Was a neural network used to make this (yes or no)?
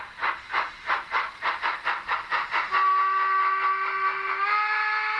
no